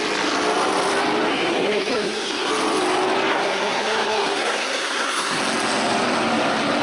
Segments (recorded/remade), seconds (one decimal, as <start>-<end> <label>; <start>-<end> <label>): 0.0-1.3 recorded; 1.3-2.5 remade; 2.5-3.3 recorded; 3.3-5.4 remade; 5.4-6.8 recorded